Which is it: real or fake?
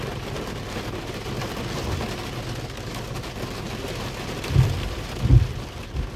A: real